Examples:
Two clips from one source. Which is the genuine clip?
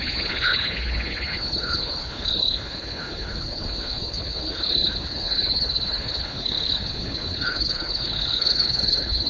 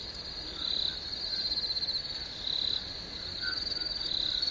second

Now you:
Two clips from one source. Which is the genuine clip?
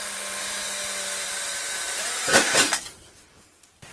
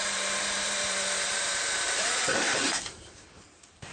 first